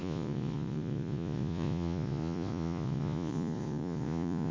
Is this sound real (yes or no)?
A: no